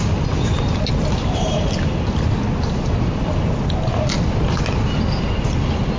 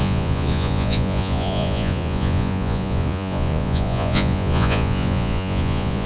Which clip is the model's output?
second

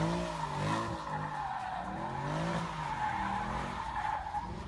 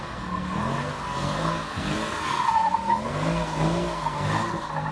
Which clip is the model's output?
second